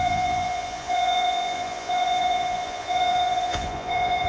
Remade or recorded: remade